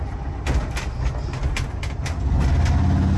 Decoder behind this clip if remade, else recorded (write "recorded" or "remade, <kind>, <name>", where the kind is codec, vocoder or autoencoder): recorded